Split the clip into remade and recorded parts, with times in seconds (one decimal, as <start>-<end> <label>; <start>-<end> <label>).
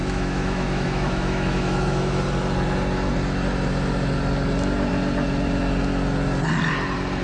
0.0-2.2 remade; 2.2-7.2 recorded